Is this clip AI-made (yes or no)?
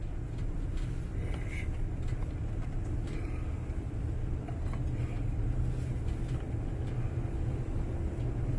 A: no